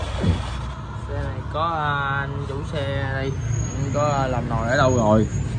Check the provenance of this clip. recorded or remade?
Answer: recorded